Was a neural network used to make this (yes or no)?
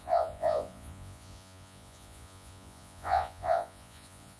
yes